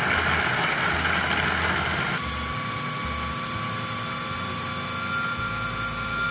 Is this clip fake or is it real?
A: real